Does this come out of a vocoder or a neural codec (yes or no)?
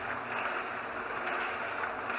no